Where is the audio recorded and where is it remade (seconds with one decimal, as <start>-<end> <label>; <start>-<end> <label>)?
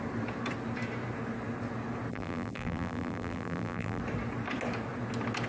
0.0-2.1 recorded; 2.1-4.0 remade; 4.0-5.5 recorded